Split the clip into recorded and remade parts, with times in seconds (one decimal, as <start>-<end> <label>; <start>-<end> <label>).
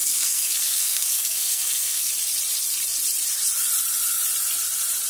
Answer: 0.0-2.1 remade; 2.1-5.1 recorded